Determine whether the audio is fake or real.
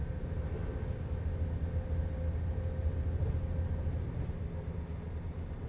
real